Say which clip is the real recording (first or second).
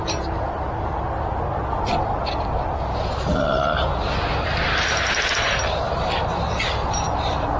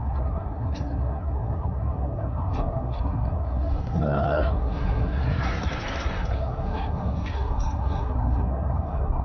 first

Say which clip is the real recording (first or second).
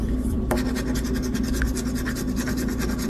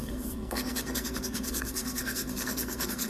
first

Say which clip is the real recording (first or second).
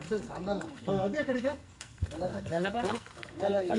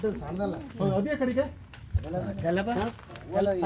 second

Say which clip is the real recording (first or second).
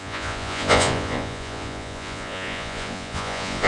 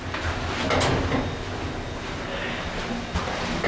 second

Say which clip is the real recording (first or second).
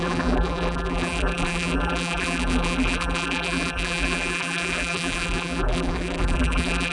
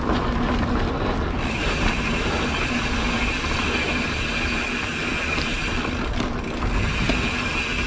second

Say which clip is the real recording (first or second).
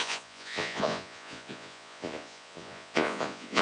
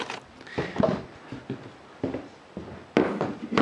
second